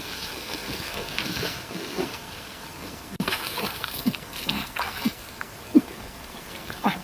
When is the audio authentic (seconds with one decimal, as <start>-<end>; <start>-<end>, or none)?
none